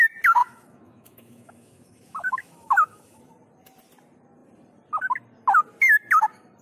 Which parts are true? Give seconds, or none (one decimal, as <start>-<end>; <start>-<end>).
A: 0.0-0.4; 3.2-6.6